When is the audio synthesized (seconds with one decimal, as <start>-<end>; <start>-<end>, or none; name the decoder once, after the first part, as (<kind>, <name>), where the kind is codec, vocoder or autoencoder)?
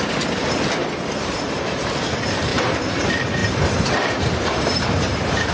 0.8-1.9 (vocoder, BigVGAN v2); 2.5-3.0; 3.4-5.5